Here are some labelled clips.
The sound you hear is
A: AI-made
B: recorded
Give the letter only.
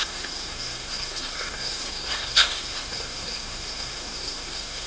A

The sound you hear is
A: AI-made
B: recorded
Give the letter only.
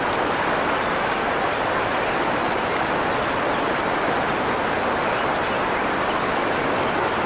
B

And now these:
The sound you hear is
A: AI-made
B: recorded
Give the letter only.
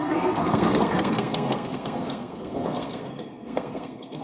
A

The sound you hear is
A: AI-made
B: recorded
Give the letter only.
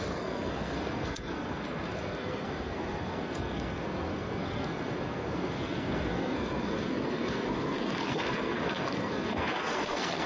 A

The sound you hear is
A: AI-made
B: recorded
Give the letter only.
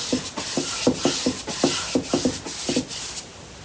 B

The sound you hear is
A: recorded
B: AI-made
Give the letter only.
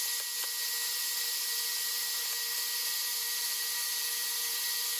A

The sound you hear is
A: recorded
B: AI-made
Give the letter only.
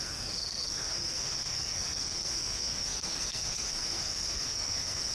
B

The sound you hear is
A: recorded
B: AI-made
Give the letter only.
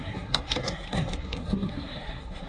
B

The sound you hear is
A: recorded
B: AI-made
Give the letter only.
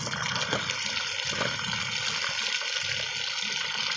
A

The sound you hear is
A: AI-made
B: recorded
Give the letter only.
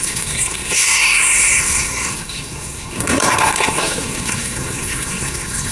A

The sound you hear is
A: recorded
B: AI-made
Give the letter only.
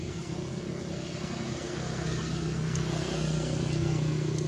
B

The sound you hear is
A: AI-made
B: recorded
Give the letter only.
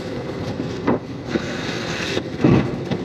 A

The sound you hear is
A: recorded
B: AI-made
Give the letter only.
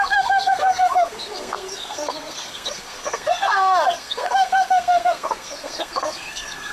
B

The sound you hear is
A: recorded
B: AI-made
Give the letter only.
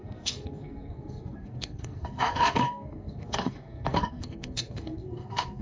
B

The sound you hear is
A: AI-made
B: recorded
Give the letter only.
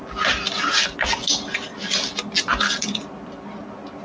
B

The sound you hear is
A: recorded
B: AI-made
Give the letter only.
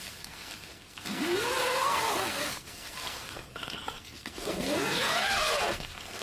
B